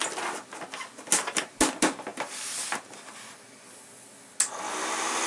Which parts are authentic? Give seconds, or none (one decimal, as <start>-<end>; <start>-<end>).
0.0-5.3